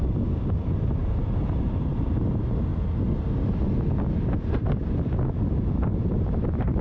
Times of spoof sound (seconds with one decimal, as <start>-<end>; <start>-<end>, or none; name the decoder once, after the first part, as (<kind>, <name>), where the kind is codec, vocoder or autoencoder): 0.0-2.7 (vocoder, BigVGAN v2); 6.2-6.8